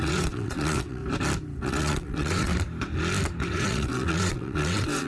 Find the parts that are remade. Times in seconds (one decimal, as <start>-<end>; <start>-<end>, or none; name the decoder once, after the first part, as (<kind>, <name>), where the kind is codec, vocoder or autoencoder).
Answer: 0.0-1.0 (vocoder, WaveNeXt); 1.6-2.5; 3.5-5.1